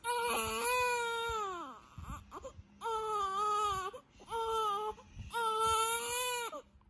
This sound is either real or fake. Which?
real